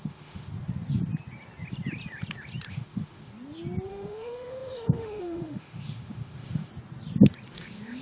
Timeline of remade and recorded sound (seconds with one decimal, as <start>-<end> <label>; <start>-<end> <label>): 0.0-0.5 remade; 0.5-2.7 recorded; 2.7-3.3 remade; 3.3-3.9 recorded; 3.9-6.7 remade; 6.7-7.5 recorded; 7.5-8.0 remade